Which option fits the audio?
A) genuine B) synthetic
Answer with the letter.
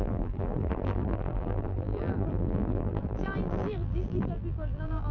B